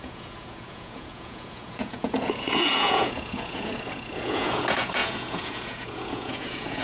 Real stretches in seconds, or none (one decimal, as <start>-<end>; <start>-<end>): none